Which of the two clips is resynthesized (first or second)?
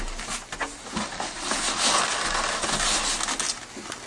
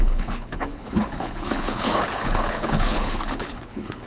second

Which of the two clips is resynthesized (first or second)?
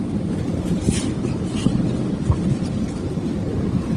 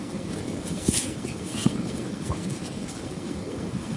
second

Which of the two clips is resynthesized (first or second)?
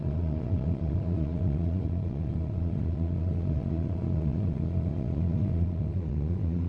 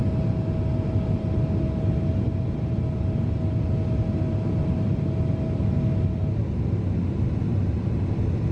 first